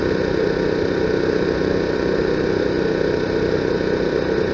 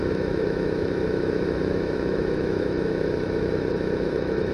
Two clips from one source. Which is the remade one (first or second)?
second